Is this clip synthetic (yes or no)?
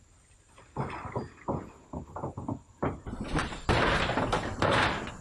no